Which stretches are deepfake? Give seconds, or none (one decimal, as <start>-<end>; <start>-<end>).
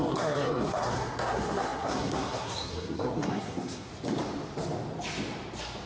0.0-3.9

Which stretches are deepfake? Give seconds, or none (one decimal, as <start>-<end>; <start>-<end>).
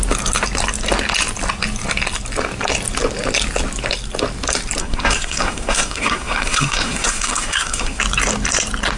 4.8-8.0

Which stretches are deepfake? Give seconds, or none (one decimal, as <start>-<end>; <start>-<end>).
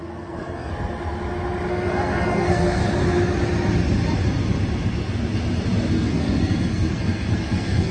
0.0-0.7; 1.7-2.8; 5.9-7.9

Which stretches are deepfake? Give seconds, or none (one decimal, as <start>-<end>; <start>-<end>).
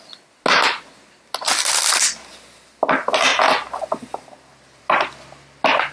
none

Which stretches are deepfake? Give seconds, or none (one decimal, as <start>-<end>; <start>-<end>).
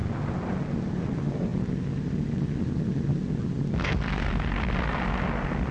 3.8-4.3